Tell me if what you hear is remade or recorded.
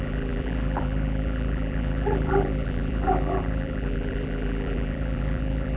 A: remade